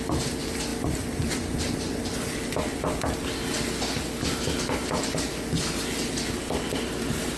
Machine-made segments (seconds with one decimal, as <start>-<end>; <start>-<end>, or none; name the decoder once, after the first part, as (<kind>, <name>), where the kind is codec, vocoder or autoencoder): none